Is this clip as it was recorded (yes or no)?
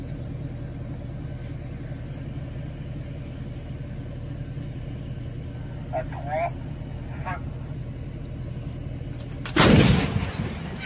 yes